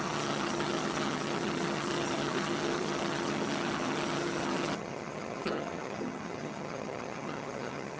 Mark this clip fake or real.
fake